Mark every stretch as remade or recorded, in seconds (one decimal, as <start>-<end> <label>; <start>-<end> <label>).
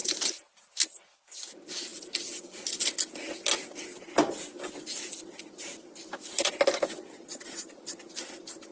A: 0.0-8.7 recorded